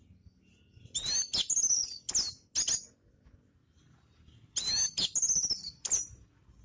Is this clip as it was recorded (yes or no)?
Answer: yes